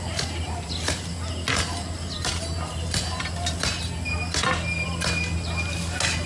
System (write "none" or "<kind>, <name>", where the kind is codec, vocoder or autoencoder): none